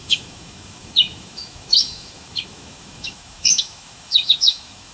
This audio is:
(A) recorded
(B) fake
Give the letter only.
B